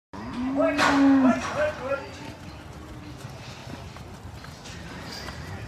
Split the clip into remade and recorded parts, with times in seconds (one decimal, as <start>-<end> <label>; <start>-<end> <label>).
0.0-5.7 recorded